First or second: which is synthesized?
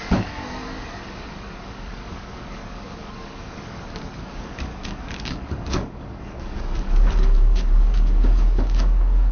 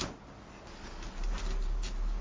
first